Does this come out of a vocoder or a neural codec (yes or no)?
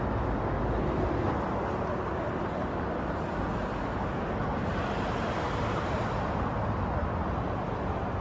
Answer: no